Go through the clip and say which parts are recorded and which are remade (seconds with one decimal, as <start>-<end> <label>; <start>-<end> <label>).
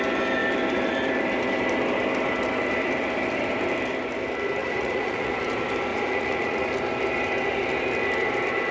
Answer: 0.0-4.6 recorded; 4.6-5.3 remade; 5.3-5.9 recorded; 5.9-6.7 remade; 6.7-8.7 recorded